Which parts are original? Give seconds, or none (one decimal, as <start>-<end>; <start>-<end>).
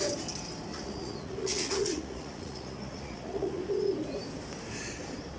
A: 0.0-0.7; 3.6-5.4